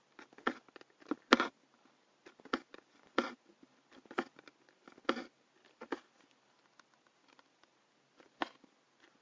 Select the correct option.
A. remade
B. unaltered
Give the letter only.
B